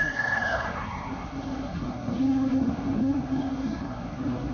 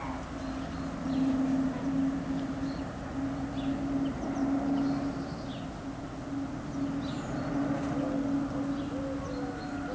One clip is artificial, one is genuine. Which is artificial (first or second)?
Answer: first